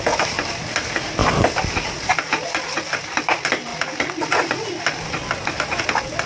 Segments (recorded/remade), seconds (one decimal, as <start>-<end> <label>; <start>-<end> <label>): 0.0-6.3 recorded